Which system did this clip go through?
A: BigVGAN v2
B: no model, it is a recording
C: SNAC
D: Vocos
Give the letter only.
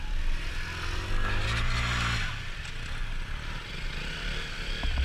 B